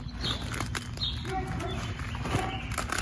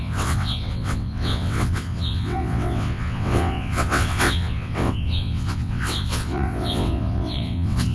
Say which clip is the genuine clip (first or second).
first